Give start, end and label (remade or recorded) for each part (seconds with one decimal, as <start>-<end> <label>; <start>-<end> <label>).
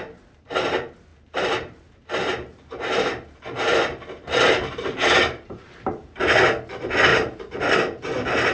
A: 0.0-1.1 recorded; 1.1-6.2 remade; 6.2-7.1 recorded; 7.1-7.7 remade; 7.7-8.5 recorded